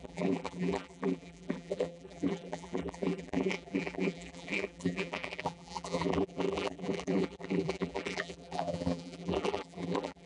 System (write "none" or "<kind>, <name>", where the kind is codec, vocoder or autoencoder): vocoder, BigVGAN v2